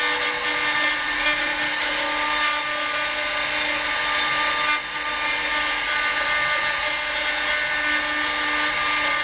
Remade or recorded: recorded